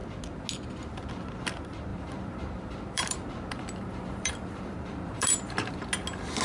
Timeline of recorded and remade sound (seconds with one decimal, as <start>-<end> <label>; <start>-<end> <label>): 0.0-1.9 recorded; 1.9-5.7 remade; 5.7-6.4 recorded